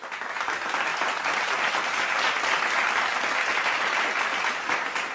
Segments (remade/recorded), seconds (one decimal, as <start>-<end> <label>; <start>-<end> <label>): 0.0-5.1 recorded